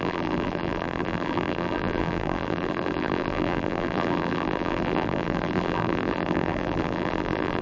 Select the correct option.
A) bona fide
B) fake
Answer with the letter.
B